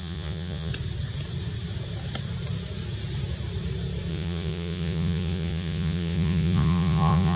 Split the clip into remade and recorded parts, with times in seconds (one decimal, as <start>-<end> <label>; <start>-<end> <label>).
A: 0.0-0.7 remade; 0.7-4.1 recorded; 4.1-7.4 remade

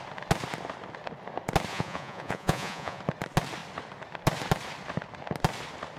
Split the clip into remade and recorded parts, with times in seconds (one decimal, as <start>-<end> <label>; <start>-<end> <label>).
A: 0.0-1.7 recorded; 1.7-3.0 remade; 3.0-6.0 recorded

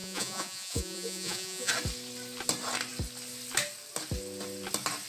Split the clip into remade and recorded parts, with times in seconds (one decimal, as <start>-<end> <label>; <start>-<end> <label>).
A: 0.0-1.7 remade; 1.7-5.1 recorded

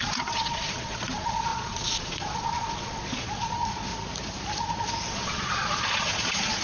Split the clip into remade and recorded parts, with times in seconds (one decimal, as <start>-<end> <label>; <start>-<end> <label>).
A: 0.0-3.9 remade; 3.9-5.1 recorded; 5.1-6.6 remade

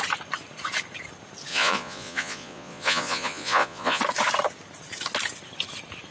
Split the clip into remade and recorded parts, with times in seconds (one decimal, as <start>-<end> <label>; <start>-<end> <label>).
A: 0.0-1.5 recorded; 1.5-4.0 remade; 4.0-6.1 recorded